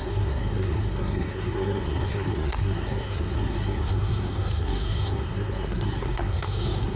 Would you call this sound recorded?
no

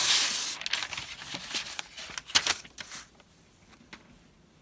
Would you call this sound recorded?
yes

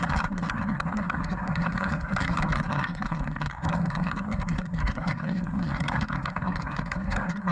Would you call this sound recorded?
no